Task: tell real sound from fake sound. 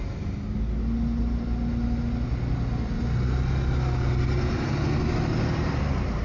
real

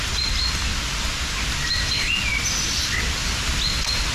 real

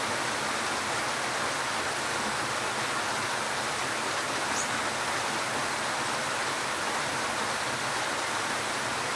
real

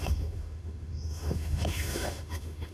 fake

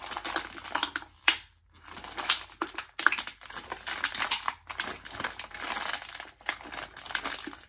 real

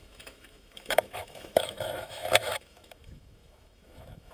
fake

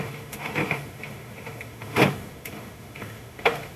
fake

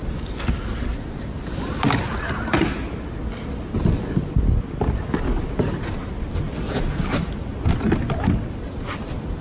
real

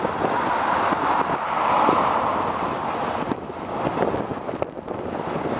real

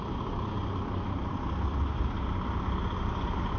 real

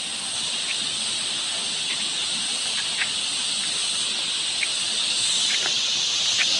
real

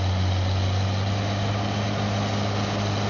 real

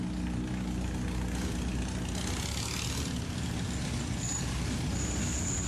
real